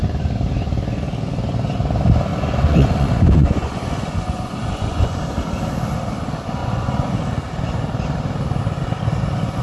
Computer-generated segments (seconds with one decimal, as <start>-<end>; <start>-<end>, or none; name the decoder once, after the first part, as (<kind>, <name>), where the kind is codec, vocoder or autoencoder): 2.3-5.2 (vocoder, Vocos); 6.6-7.2